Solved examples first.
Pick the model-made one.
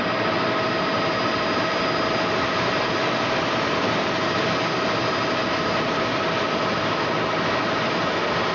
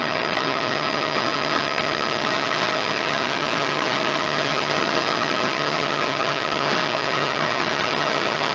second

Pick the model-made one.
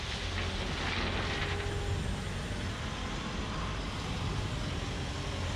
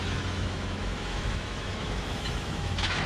second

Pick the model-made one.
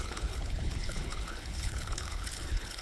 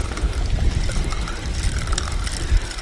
first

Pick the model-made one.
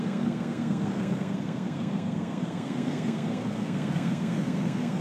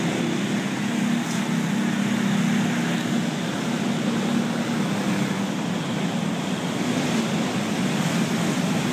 first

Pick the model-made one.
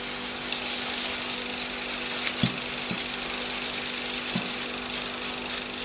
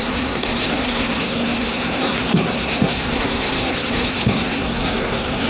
second